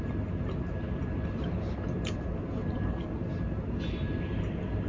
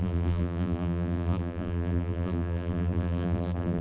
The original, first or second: first